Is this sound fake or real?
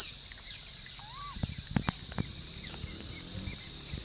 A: fake